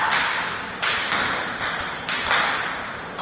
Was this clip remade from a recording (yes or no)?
no